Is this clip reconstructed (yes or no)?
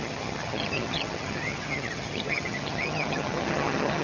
yes